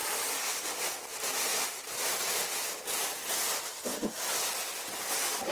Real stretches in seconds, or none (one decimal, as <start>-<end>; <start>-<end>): 0.0-5.5